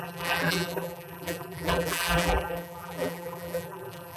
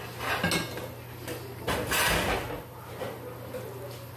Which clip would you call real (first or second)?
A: second